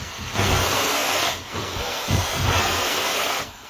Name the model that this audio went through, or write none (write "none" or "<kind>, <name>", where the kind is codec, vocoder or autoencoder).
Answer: codec, SNAC